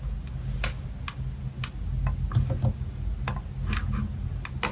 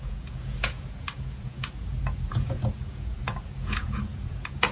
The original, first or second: first